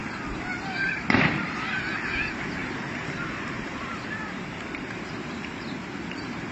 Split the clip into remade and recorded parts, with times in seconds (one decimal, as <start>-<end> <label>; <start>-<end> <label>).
0.0-1.9 remade; 1.9-2.6 recorded; 2.6-6.5 remade